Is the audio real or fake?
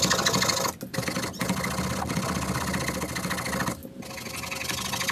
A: real